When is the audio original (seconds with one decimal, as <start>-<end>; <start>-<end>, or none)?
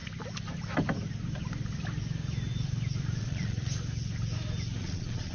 0.0-3.2; 3.6-4.8